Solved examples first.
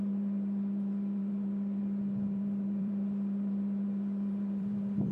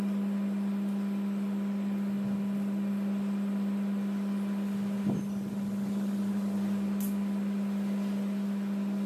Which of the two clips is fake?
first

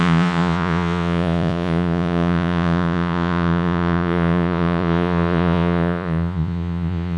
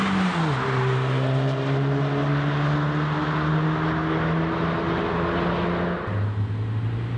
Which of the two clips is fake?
first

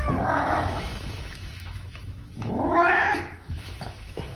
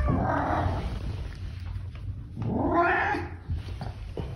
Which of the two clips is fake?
first